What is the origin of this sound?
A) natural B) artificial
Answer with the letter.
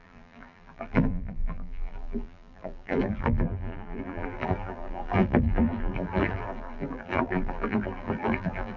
B